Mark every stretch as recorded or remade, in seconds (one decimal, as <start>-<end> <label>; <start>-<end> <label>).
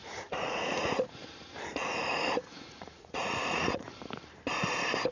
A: 0.0-0.9 remade; 0.9-1.7 recorded; 1.7-3.9 remade; 3.9-5.1 recorded